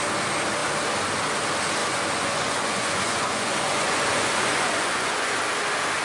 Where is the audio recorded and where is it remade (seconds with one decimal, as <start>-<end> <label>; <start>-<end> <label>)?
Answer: 0.0-1.8 recorded; 1.8-5.4 remade; 5.4-6.0 recorded